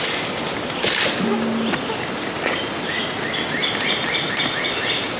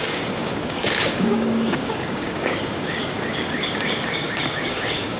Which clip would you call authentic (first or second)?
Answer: first